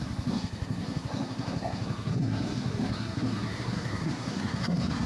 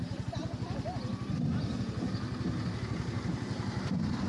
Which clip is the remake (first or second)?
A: first